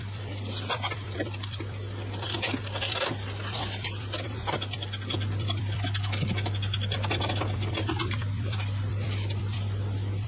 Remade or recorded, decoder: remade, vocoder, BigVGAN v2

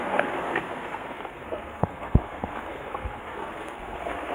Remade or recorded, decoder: remade, codec, SNAC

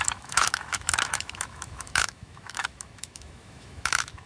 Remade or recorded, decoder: remade, autoencoder, DAC-VAE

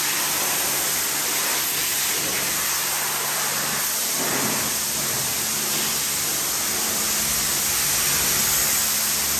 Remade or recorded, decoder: recorded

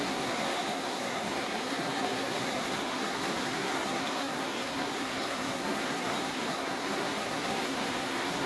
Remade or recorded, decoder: remade, codec, SNAC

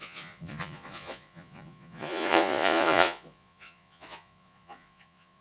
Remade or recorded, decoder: remade, vocoder, Vocos